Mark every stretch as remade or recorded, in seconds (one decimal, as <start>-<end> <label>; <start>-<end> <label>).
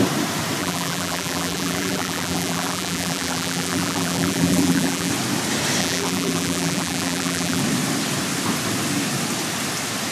0.0-0.6 recorded; 0.6-5.1 remade; 5.1-5.8 recorded; 5.8-7.6 remade; 7.6-10.1 recorded